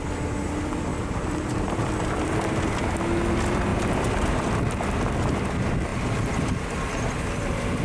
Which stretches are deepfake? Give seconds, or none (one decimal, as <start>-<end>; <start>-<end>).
0.9-2.1; 3.7-4.5; 5.9-7.0